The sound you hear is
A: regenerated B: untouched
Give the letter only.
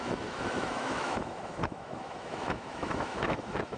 A